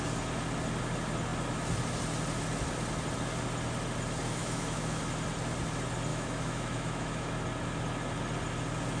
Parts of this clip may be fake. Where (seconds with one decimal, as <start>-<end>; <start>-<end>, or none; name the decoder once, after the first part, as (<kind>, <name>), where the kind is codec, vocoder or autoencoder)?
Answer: 4.4-5.0 (autoencoder, DAC-VAE); 6.1-7.3